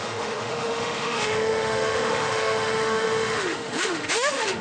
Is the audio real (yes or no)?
no